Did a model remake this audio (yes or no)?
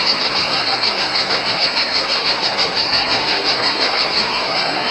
yes